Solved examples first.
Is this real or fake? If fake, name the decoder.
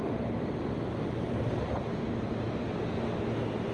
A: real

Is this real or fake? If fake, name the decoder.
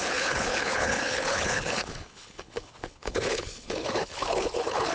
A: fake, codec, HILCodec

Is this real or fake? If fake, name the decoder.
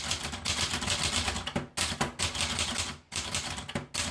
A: real